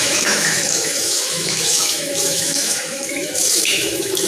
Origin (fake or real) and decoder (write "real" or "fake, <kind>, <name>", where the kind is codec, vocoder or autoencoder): fake, autoencoder, DAC-VAE